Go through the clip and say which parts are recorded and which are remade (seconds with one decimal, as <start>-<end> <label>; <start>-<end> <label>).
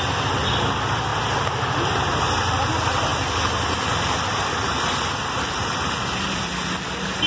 0.0-7.3 recorded